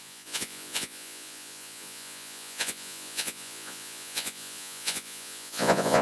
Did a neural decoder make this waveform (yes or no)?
yes